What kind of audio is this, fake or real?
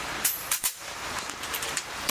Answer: fake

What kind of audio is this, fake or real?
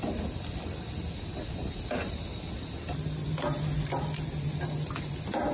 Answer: real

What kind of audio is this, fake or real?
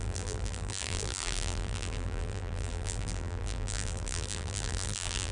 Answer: fake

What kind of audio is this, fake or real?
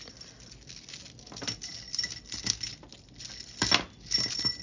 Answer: real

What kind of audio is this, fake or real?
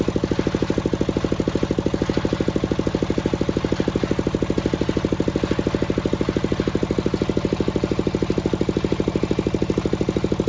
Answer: real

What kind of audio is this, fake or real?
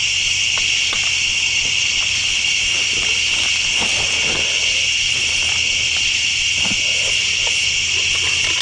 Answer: real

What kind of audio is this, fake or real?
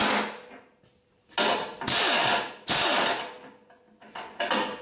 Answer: real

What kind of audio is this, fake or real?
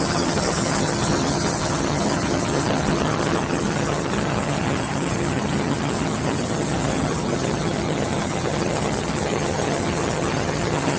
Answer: fake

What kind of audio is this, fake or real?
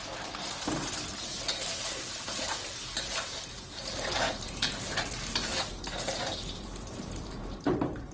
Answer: fake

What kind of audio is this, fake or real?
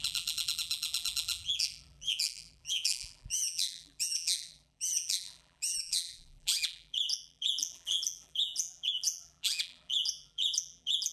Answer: fake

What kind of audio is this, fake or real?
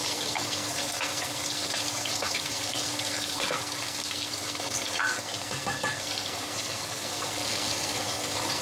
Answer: fake